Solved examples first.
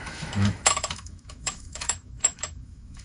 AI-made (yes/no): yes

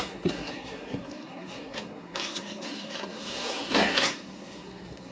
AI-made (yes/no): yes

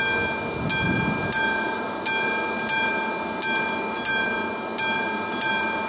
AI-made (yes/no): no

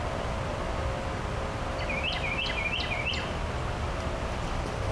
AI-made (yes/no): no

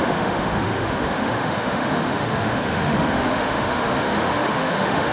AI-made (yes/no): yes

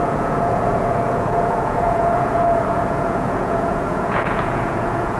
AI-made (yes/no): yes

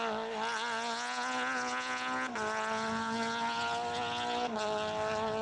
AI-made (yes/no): no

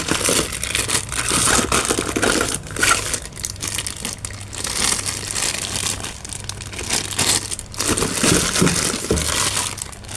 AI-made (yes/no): no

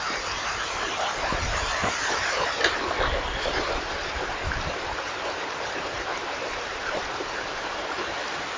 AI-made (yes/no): yes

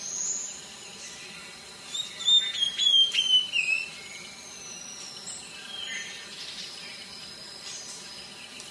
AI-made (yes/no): no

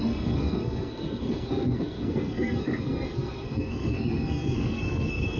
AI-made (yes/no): yes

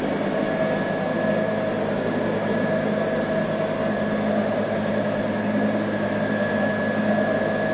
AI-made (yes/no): no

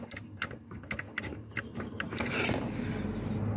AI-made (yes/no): no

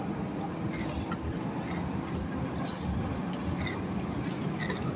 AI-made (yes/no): no